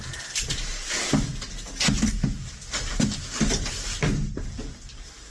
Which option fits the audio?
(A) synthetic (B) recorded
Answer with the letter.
B